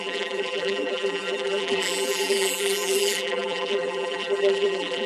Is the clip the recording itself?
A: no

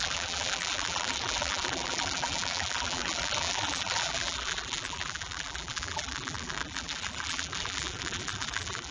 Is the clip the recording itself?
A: no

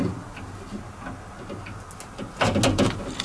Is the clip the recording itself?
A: yes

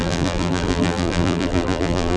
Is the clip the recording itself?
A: no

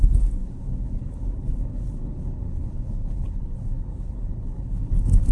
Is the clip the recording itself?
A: no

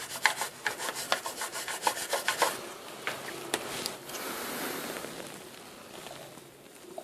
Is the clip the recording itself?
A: yes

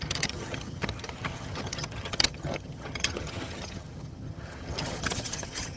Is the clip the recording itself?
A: no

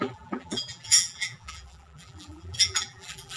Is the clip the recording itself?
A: no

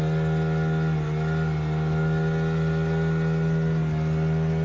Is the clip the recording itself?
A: yes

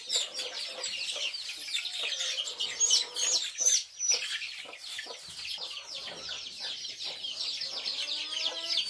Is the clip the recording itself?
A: yes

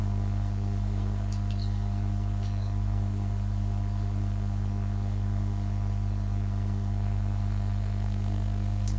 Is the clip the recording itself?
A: no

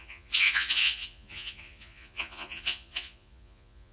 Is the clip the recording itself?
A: no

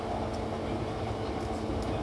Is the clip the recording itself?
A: yes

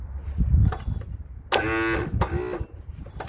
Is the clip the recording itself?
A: yes